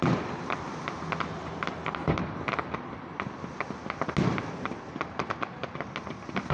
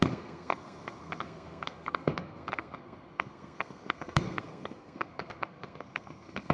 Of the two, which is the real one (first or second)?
first